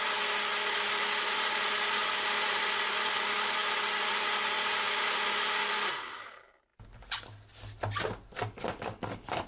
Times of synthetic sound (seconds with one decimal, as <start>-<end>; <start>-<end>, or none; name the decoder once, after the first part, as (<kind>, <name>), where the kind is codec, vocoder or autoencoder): none